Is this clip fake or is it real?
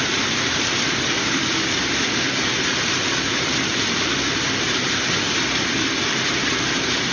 real